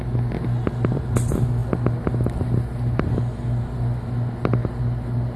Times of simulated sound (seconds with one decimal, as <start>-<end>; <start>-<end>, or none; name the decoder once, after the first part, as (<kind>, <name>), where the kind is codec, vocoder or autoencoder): none